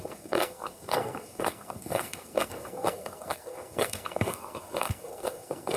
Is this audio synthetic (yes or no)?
yes